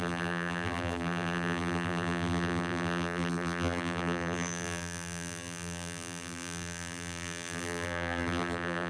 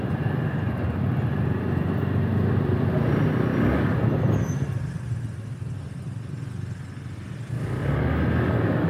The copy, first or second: first